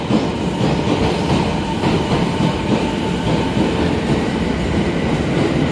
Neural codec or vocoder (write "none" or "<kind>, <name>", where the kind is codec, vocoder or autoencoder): none